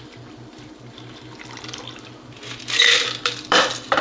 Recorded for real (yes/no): no